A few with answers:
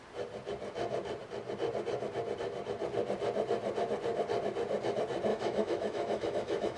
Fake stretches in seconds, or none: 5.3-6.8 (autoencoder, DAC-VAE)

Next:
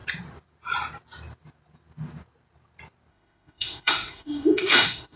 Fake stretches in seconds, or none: 3.1-5.2 (autoencoder, DAC-VAE)

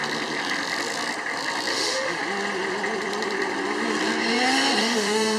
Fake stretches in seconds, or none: 1.7-2.2 (autoencoder, DAC-VAE); 4.8-5.4

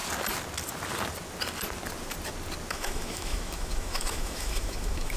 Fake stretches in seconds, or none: 2.7-5.2 (autoencoder, DAC-VAE)

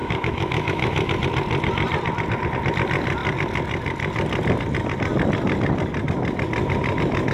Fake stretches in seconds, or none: 0.0-1.1 (autoencoder, DAC-VAE)

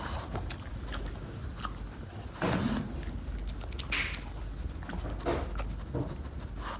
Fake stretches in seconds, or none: 0.7-1.4 (autoencoder, DAC-VAE)

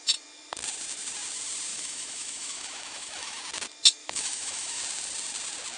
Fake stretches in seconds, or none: 1.7-3.4 (autoencoder, DAC-VAE); 4.0-4.8

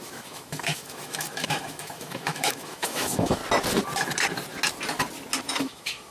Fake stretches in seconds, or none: 0.0-3.4 (autoencoder, DAC-VAE); 5.4-6.1